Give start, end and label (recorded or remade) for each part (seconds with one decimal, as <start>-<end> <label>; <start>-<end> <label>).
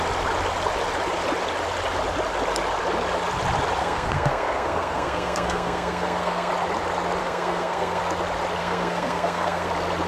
0.0-3.8 recorded; 3.8-6.5 remade; 6.5-7.2 recorded; 7.2-8.0 remade; 8.0-8.6 recorded; 8.6-9.7 remade; 9.7-10.1 recorded